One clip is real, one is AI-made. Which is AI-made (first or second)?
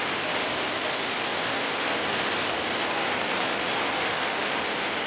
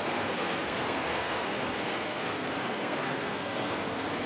second